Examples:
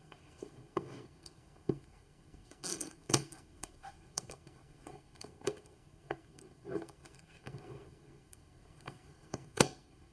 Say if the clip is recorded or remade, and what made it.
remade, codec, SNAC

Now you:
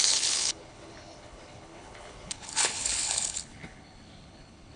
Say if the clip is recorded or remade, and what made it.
remade, codec, HILCodec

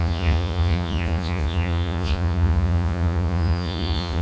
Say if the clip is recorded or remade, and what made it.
remade, vocoder, Vocos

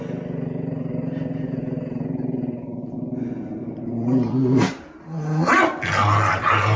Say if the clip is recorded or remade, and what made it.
recorded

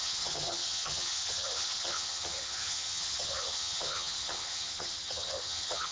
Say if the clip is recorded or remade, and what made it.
remade, vocoder, HiFi-GAN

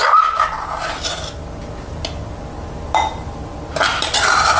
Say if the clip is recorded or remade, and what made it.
recorded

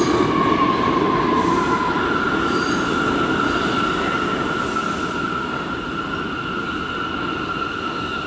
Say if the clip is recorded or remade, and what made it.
recorded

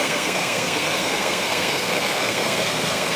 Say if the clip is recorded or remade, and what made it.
remade, codec, SNAC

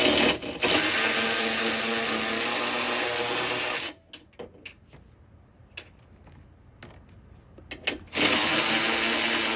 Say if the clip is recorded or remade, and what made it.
recorded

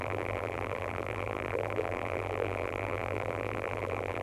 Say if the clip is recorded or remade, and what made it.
remade, vocoder, BigVGAN v2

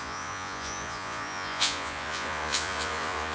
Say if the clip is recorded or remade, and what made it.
remade, vocoder, Vocos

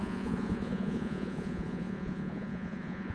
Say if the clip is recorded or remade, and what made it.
remade, vocoder, Vocos